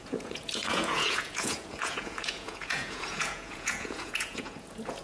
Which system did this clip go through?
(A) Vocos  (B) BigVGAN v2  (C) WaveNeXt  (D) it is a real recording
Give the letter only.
A